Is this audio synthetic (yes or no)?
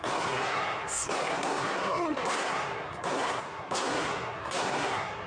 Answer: yes